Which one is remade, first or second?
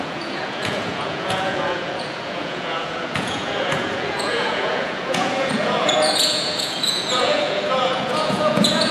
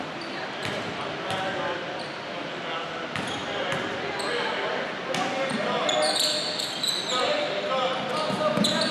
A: first